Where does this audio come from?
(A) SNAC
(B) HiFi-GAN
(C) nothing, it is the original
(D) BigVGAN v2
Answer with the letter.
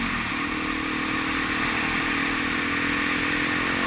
C